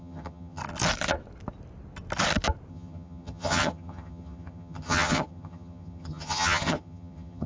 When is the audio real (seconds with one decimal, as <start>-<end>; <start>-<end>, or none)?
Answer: 0.6-2.7